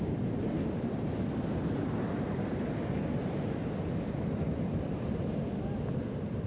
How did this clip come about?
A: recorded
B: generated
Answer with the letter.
A